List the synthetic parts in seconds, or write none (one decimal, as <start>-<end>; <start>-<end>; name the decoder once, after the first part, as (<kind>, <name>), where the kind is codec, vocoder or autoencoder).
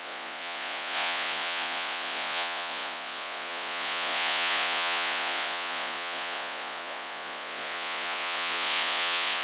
0.0-9.4 (vocoder, Vocos)